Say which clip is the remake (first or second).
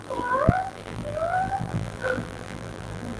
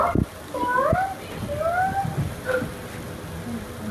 first